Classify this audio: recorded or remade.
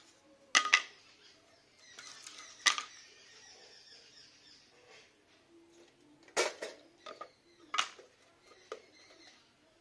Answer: recorded